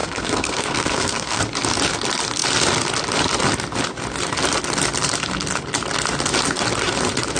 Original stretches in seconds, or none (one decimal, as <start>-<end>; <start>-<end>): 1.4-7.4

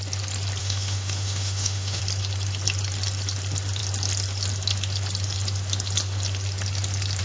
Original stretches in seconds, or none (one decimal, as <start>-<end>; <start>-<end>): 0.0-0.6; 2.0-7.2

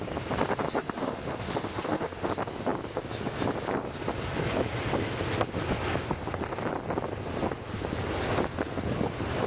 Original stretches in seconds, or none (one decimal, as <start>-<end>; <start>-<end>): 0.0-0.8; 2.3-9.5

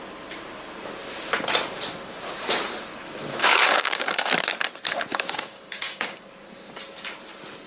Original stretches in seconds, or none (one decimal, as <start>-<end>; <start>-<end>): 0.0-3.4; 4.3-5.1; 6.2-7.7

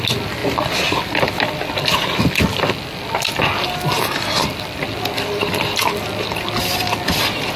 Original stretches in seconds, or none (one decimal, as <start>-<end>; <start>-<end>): 0.0-7.6

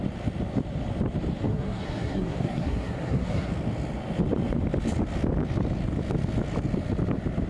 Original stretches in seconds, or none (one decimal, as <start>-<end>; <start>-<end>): 0.0-1.5; 3.5-7.5

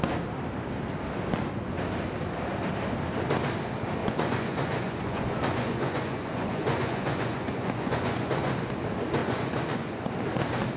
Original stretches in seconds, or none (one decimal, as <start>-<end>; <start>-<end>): 0.0-4.0; 8.7-9.2; 10.1-10.8

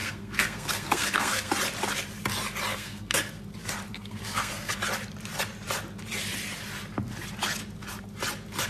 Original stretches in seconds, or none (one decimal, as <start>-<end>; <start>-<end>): 1.5-2.7; 3.4-3.9; 4.7-8.7